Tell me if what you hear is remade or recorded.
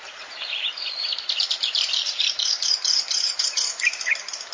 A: remade